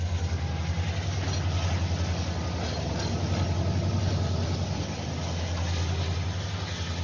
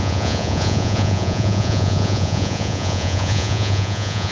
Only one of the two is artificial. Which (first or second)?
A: second